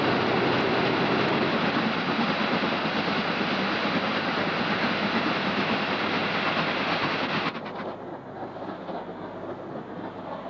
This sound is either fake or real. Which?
real